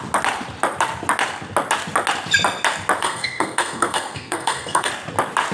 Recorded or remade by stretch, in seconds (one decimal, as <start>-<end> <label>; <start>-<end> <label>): 0.0-3.0 recorded; 3.0-4.9 remade; 4.9-5.5 recorded